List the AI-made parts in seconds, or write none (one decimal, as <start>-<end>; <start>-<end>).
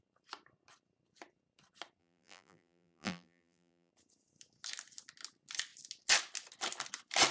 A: 2.0-3.9